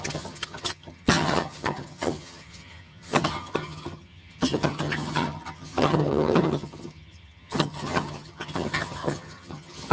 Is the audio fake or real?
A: fake